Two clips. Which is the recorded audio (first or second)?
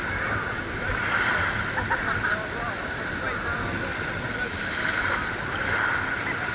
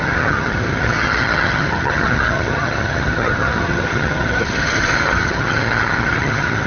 first